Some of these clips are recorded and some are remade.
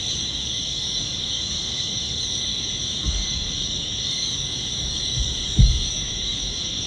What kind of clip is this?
remade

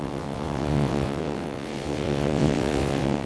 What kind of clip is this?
remade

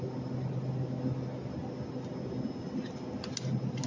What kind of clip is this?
recorded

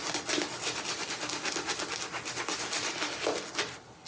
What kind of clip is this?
recorded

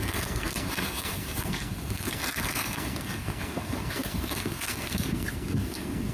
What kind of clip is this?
remade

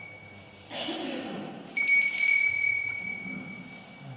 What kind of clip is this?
recorded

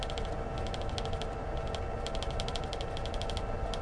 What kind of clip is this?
recorded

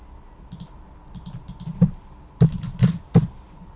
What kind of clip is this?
remade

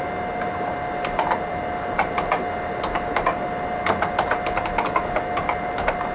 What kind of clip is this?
recorded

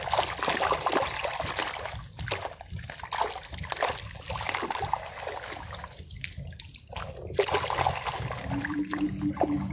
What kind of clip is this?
recorded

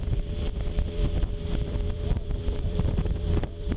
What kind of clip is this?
remade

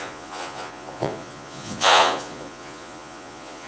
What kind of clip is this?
remade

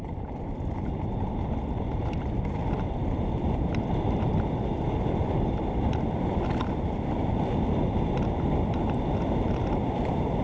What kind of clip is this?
recorded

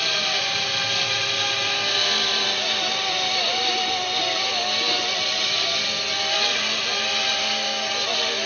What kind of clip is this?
recorded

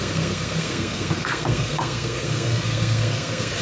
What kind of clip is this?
remade